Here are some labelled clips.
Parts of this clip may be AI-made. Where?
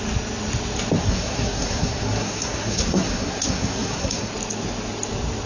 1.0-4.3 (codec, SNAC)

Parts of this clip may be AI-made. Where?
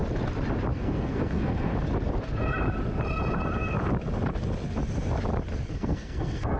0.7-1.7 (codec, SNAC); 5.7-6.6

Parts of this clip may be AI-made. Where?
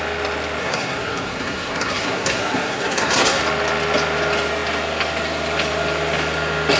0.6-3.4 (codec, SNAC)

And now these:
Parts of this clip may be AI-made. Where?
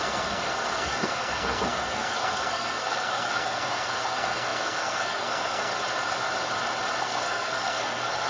0.0-5.7 (codec, SNAC); 7.0-8.3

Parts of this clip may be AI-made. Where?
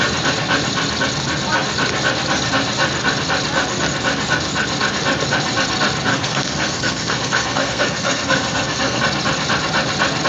6.1-9.0 (codec, SNAC)